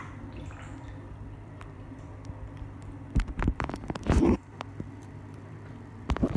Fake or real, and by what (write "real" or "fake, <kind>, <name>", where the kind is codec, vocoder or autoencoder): fake, vocoder, BigVGAN v2